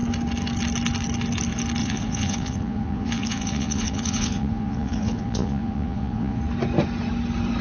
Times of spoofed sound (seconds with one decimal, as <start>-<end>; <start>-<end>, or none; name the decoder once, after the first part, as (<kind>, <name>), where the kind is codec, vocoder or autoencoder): 1.8-6.4 (vocoder, Vocos)